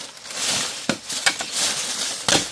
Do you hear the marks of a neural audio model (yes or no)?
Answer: no